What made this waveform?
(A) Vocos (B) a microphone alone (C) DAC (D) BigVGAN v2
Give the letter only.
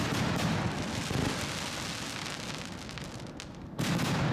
B